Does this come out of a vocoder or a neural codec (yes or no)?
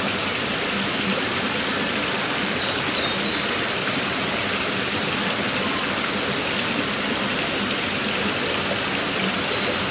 no